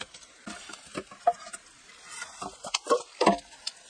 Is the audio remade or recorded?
recorded